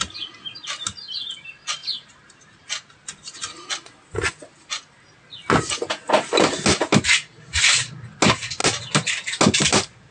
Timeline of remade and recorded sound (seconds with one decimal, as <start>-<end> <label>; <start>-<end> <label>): 0.0-10.1 recorded